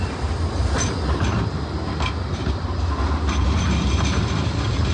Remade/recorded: recorded